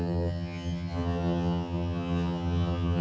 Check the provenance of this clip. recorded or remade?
remade